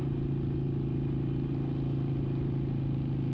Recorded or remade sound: recorded